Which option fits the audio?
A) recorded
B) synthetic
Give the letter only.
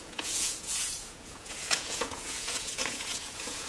B